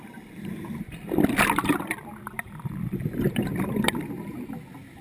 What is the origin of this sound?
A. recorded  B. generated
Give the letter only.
B